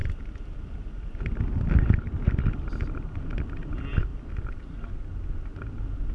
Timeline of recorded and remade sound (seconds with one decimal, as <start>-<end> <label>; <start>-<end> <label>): 0.0-4.1 recorded; 4.1-4.9 remade; 4.9-6.1 recorded